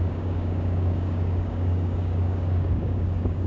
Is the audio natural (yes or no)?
no